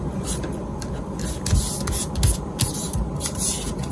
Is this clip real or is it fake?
real